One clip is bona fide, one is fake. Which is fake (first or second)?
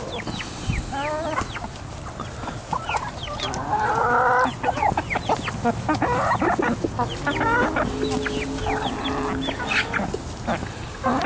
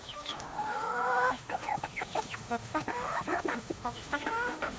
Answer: second